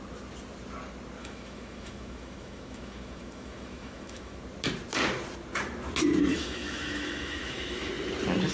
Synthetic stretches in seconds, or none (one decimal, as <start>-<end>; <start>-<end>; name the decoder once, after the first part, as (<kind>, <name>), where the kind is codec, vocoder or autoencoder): 1.2-4.4 (autoencoder, DAC-VAE); 6.3-7.9